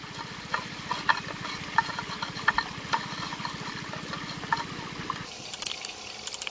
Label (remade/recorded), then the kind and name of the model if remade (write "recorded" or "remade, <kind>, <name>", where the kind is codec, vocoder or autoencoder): recorded